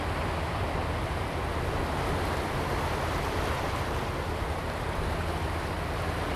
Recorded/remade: recorded